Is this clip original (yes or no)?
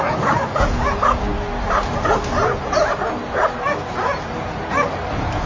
yes